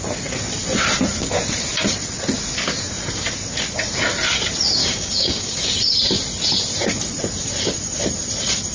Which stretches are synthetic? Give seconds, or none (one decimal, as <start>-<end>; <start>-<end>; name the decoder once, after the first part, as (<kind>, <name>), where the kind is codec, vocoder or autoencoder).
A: 4.8-5.8 (codec, DAC)